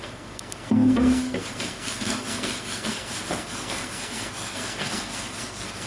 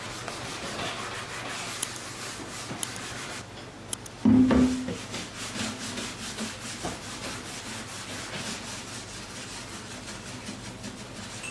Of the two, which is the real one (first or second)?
second